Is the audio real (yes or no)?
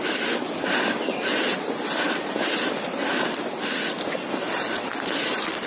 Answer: yes